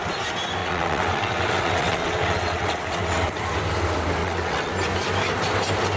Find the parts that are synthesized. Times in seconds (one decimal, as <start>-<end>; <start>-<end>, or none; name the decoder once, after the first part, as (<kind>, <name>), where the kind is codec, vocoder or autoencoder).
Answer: 0.6-3.4 (vocoder, WaveNeXt); 4.2-4.7

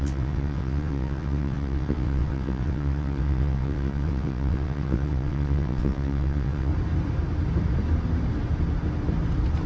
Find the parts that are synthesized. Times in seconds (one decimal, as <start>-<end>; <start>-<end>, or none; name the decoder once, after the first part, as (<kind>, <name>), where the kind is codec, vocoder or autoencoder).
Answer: 0.0-6.7 (vocoder, WaveNeXt)

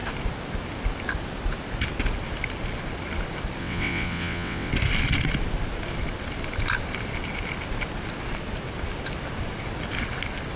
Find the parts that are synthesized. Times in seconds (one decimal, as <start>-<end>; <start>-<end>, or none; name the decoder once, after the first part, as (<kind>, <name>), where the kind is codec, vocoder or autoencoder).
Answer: 3.6-4.7 (vocoder, WaveNeXt)

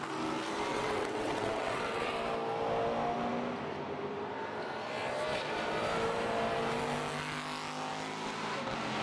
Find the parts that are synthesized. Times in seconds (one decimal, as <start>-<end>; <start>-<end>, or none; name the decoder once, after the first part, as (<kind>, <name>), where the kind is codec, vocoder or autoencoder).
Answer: 0.7-2.1 (vocoder, WaveNeXt)

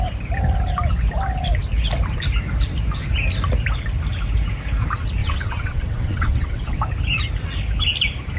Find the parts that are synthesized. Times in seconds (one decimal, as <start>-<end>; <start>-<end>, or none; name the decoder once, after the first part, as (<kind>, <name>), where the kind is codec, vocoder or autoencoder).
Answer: 5.2-6.8 (vocoder, WaveNeXt)

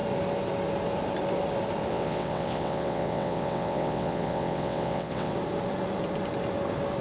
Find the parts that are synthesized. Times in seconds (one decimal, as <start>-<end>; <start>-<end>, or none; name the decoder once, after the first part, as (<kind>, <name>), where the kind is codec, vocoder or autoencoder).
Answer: 1.9-5.3 (vocoder, WaveNeXt)

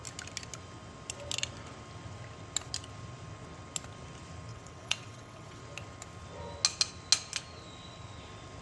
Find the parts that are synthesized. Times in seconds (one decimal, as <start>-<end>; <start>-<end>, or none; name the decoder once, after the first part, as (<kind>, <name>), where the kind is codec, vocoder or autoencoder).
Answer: 4.5-5.6 (vocoder, WaveNeXt)

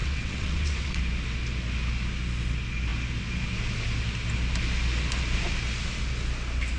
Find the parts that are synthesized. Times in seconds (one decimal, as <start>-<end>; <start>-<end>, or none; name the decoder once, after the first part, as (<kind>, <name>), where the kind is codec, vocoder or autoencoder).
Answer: 0.0-1.0 (vocoder, WaveNeXt)